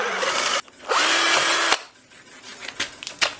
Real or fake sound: real